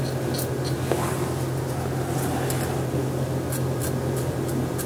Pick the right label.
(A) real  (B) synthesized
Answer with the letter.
A